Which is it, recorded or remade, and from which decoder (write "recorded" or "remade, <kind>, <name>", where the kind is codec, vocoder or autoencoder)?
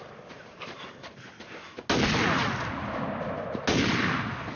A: recorded